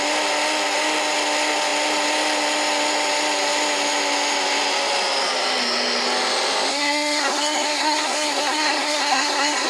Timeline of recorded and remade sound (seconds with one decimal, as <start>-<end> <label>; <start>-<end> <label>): 0.0-6.7 recorded; 6.7-9.7 remade